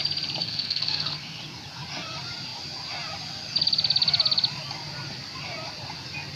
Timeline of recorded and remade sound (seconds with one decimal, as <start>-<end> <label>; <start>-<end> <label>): 0.0-0.4 recorded; 0.4-1.4 remade; 1.4-6.4 recorded